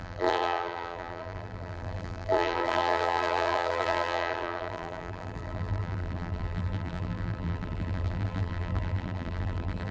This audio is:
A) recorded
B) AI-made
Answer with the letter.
B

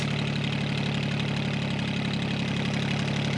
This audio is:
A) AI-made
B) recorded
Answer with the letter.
B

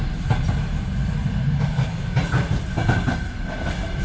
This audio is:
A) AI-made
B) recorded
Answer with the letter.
B